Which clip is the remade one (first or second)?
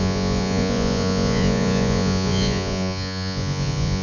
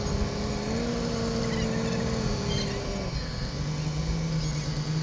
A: first